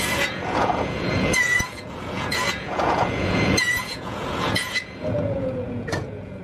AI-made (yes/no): yes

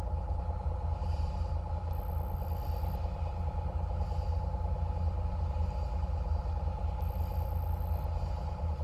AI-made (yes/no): no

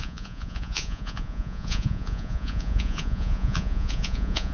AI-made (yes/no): yes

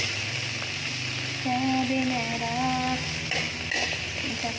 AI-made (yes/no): no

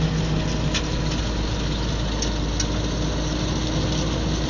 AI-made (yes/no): no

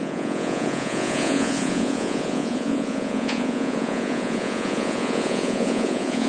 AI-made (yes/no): yes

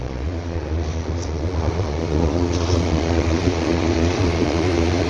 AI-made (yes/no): yes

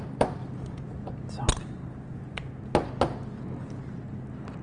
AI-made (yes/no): no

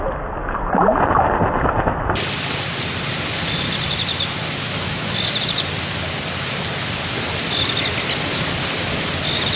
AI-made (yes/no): no